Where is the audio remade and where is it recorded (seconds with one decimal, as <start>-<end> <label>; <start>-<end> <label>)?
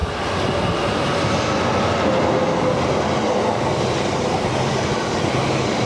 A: 0.0-5.9 recorded